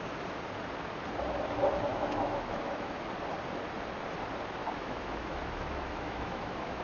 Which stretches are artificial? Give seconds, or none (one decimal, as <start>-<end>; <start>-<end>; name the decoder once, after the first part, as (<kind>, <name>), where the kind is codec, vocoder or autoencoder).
1.9-3.0 (autoencoder, DAC-VAE); 4.6-6.8

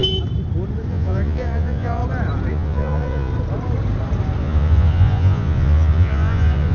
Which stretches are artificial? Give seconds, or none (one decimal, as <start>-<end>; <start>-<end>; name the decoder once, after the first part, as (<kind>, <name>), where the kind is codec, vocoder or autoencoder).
0.9-2.0 (vocoder, Vocos); 2.5-3.3; 4.4-6.7